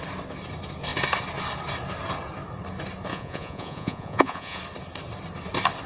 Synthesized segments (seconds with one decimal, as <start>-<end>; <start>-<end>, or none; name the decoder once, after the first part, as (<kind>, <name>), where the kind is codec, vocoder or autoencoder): 3.1-4.6 (vocoder, Vocos)